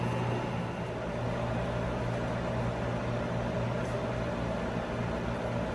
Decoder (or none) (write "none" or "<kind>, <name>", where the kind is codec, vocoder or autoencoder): none